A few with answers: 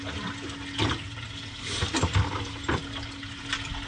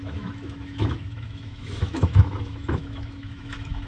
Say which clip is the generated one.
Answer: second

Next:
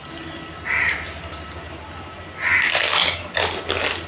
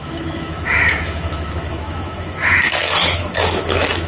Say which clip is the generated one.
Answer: second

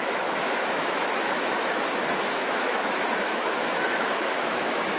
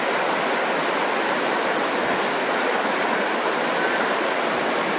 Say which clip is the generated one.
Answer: first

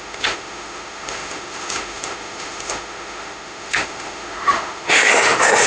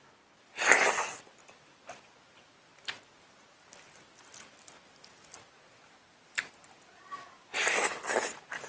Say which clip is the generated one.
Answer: first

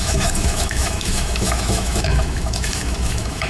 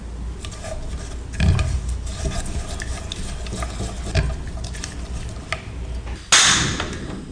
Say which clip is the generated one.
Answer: first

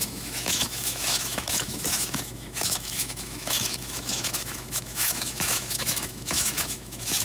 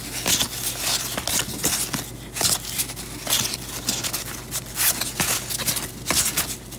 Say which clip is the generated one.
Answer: first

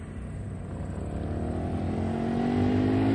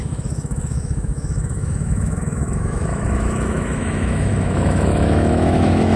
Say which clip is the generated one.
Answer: second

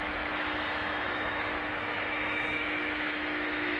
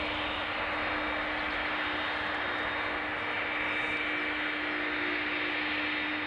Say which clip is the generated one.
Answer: first